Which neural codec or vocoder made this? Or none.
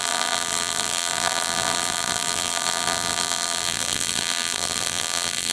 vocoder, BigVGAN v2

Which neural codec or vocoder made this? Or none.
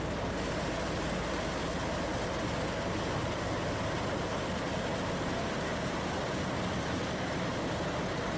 none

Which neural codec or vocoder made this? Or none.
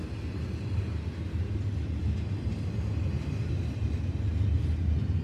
none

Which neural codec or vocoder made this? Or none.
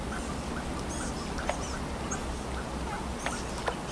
none